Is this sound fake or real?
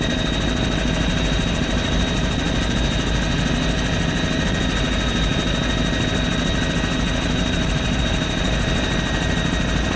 real